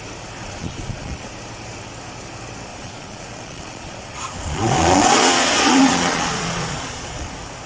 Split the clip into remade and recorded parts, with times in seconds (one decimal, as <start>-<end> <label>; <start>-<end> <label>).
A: 0.0-0.4 recorded; 0.4-1.3 remade; 1.3-2.7 recorded; 2.7-7.3 remade; 7.3-7.7 recorded